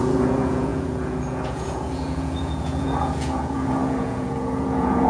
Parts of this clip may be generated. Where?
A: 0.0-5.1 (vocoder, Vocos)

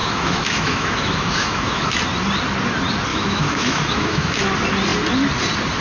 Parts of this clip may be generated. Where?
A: 0.0-1.9 (autoencoder, DAC-VAE); 3.1-4.4

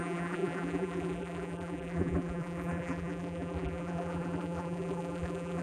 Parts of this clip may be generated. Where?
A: 0.0-5.6 (vocoder, BigVGAN v2)

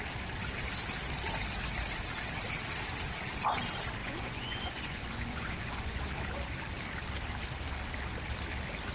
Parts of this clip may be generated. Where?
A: 4.0-6.0 (vocoder, Vocos)

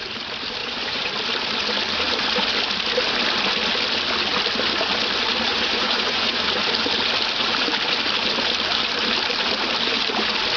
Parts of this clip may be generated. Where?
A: 0.6-1.1 (vocoder, Vocos); 5.5-6.4

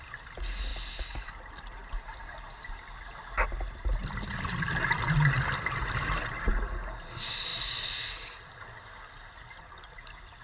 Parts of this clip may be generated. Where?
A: 7.5-9.7 (vocoder, BigVGAN v2)

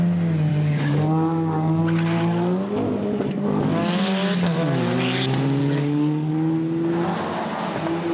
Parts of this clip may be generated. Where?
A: 0.5-1.8 (codec, DAC); 5.6-6.3